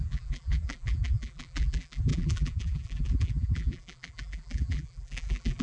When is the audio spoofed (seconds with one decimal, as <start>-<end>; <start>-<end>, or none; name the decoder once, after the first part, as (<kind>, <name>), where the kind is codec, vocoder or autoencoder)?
0.0-5.6 (vocoder, BigVGAN v2)